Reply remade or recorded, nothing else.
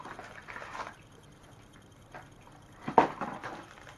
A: remade